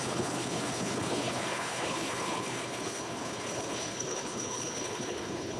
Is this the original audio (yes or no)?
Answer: no